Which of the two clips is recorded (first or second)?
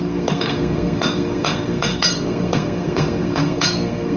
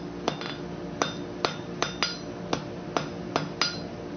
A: second